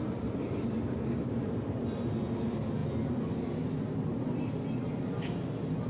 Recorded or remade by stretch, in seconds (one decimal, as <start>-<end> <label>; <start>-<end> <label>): 0.0-5.9 recorded